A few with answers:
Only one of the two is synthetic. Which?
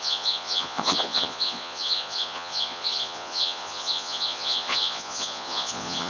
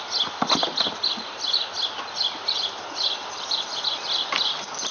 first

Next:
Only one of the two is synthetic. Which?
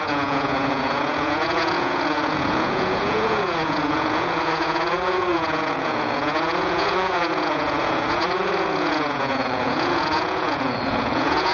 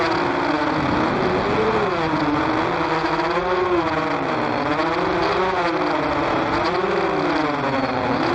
first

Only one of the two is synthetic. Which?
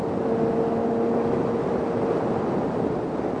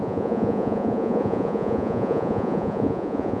second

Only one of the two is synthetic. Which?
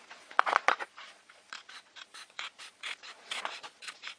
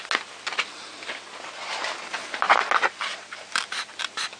first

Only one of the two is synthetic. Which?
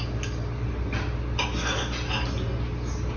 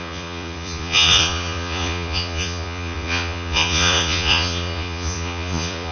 second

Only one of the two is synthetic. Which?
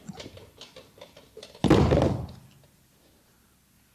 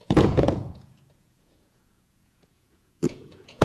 second